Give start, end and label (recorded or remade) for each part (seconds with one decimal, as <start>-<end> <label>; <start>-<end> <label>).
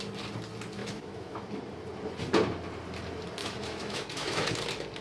0.0-0.8 recorded; 0.8-1.4 remade; 1.4-3.4 recorded; 3.4-4.5 remade; 4.5-5.0 recorded